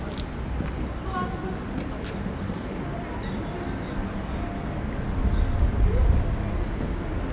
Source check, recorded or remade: recorded